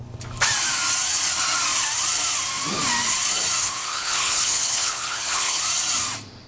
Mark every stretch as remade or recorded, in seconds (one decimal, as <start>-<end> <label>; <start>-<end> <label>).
0.0-3.6 recorded; 3.6-5.6 remade; 5.6-6.5 recorded